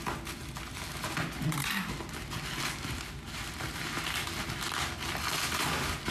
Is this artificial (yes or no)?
no